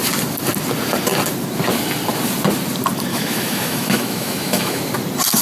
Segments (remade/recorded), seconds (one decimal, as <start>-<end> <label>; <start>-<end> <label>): 0.0-3.1 recorded; 3.1-4.8 remade; 4.8-5.4 recorded